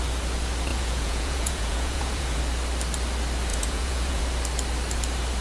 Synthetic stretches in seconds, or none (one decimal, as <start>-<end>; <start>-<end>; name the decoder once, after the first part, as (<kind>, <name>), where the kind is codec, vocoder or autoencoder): 0.7-2.4 (vocoder, Vocos); 3.5-4.2